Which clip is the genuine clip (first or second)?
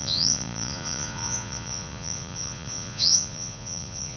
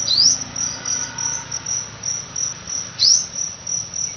second